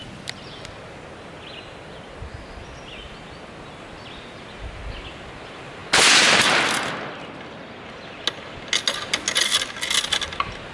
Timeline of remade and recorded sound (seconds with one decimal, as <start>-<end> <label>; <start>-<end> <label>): 0.0-10.7 recorded